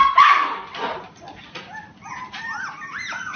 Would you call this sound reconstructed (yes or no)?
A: no